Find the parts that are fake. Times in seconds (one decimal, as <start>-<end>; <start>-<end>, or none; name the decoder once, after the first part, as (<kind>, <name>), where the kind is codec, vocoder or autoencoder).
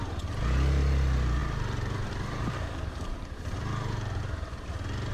1.4-4.2 (vocoder, BigVGAN v2)